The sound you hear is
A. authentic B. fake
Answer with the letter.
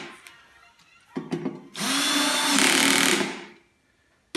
A